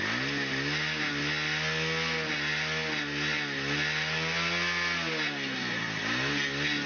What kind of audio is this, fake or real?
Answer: real